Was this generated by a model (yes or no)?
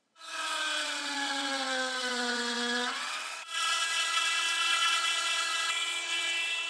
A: yes